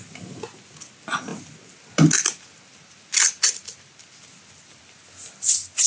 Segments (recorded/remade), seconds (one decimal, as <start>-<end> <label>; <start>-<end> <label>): 0.0-5.9 recorded